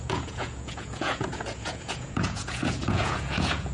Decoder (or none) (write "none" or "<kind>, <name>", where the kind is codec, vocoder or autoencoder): vocoder, Vocos